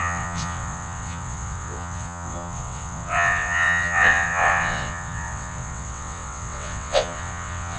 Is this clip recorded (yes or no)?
no